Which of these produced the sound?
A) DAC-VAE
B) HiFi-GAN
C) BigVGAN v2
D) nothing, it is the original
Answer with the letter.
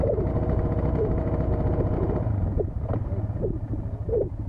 D